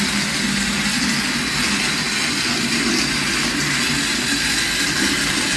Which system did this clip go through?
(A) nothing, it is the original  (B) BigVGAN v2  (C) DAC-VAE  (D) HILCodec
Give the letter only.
A